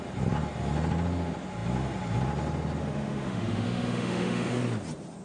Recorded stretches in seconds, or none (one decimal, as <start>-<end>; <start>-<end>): 0.0-2.8; 4.6-5.2